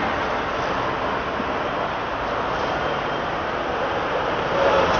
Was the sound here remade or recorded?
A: recorded